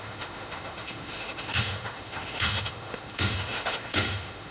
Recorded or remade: remade